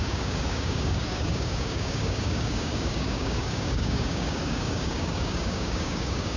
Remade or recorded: remade